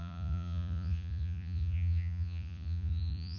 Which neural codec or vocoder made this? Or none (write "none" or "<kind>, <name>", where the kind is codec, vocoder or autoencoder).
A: vocoder, Vocos